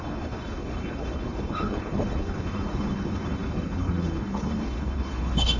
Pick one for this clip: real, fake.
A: fake